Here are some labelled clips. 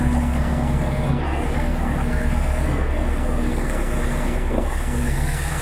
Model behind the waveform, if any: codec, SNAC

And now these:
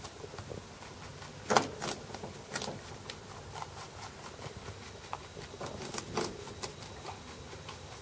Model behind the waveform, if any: none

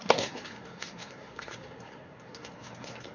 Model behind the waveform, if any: codec, SNAC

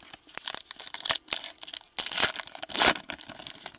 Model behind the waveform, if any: none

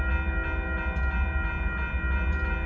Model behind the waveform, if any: none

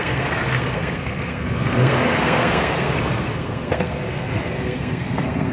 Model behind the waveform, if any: codec, SNAC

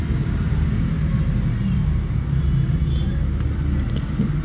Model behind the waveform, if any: none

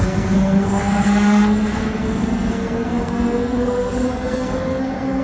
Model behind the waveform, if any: codec, SNAC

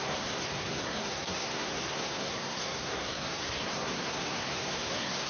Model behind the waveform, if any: codec, SNAC